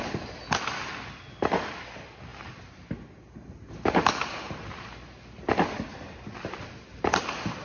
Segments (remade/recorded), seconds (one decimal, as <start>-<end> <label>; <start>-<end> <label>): 0.0-7.6 recorded